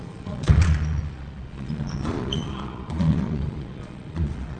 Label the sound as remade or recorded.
remade